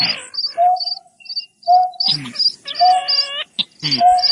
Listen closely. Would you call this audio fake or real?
real